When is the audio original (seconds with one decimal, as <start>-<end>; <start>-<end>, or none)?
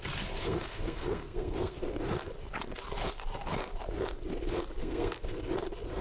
0.0-0.4; 1.8-4.8; 5.4-6.0